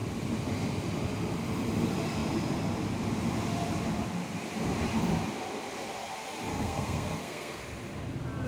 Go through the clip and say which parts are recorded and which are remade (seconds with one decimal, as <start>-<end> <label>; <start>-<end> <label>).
0.0-6.5 recorded; 6.5-7.6 remade; 7.6-8.5 recorded